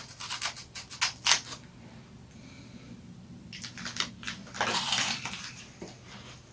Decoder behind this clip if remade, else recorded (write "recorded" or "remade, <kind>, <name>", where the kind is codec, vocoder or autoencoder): recorded